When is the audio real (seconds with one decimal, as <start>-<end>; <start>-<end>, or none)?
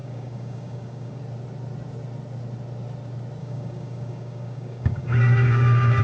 1.2-3.4